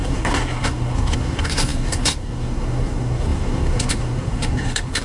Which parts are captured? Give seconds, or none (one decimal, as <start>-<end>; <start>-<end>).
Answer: none